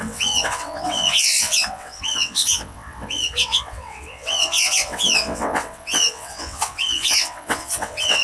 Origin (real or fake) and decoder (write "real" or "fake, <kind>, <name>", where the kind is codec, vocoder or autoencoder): fake, vocoder, WaveNeXt